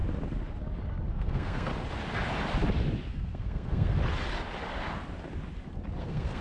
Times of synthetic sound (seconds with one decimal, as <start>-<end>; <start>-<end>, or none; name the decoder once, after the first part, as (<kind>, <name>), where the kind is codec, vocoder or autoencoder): 1.1-1.7 (codec, SNAC); 3.1-4.0; 6.0-6.4